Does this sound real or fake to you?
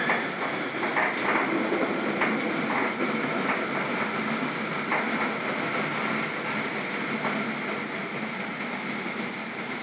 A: real